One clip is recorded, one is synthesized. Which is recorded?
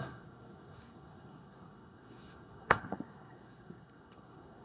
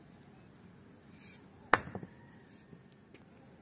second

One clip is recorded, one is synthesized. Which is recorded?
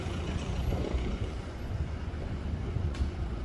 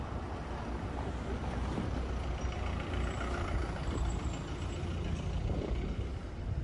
second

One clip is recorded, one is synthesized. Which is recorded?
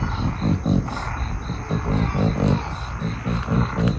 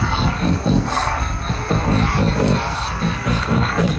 first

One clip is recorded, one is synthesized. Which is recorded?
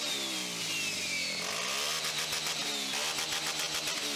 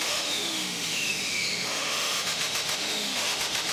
first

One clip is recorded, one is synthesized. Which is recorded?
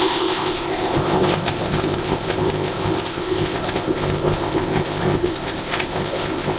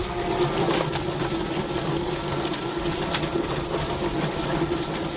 second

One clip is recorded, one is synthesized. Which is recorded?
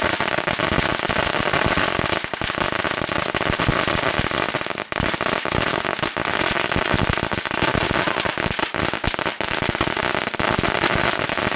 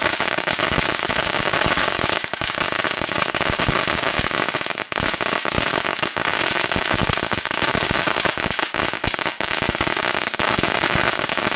first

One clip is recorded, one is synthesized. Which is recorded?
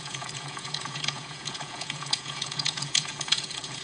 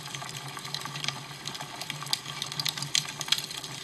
second